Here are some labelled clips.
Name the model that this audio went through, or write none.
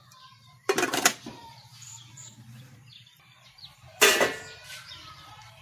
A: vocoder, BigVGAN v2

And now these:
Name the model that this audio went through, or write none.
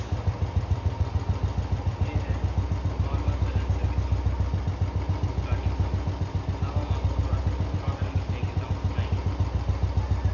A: none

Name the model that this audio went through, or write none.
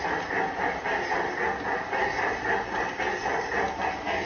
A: none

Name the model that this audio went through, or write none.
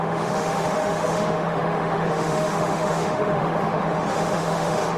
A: autoencoder, DAC-VAE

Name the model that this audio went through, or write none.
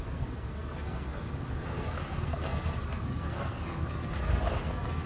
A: codec, SNAC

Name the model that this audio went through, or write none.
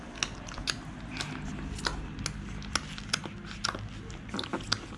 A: none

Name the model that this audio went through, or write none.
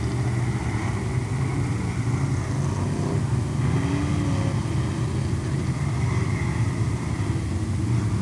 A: none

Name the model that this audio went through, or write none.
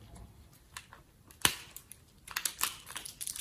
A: vocoder, BigVGAN v2